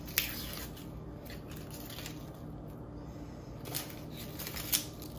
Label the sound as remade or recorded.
recorded